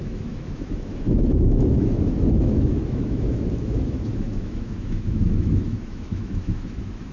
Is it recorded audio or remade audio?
remade